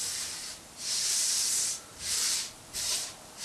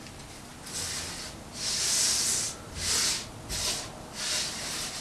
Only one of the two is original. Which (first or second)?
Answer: second